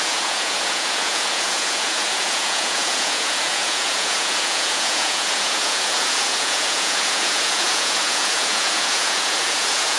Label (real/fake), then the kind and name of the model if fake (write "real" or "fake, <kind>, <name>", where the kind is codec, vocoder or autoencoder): fake, vocoder, Vocos